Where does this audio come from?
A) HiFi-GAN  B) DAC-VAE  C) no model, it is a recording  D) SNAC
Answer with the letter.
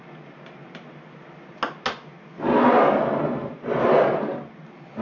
C